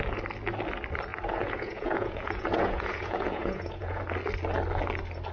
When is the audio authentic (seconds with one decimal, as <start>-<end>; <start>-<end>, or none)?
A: 0.0-1.1; 4.0-5.3